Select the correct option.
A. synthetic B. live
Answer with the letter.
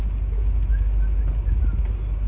B